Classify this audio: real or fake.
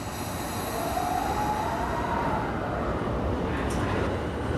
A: real